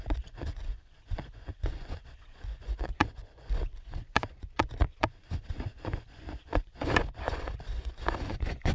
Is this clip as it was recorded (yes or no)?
no